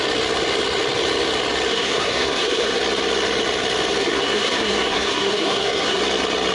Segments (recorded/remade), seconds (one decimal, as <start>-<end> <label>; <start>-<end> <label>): 0.0-1.7 recorded; 1.7-2.8 remade; 2.8-4.0 recorded; 4.0-6.0 remade; 6.0-6.5 recorded